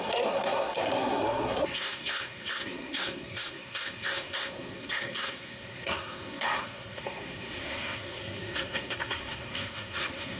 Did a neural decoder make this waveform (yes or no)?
yes